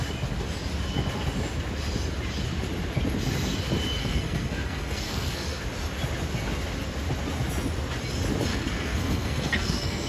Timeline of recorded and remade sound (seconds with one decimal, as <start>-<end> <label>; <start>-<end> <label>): 0.0-4.0 recorded; 4.0-5.6 remade; 5.6-8.5 recorded; 8.5-10.1 remade